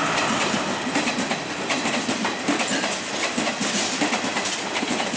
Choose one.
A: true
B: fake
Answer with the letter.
A